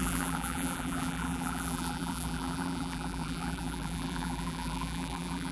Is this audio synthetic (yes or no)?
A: yes